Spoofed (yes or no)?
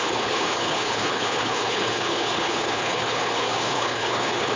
yes